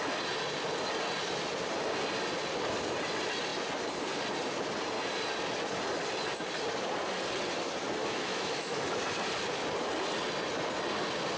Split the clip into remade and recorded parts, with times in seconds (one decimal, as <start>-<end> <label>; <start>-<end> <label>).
0.0-8.0 recorded; 8.0-8.9 remade; 8.9-11.4 recorded